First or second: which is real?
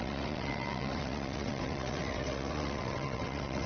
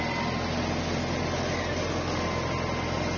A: second